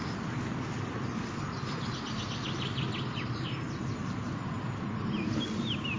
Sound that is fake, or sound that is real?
real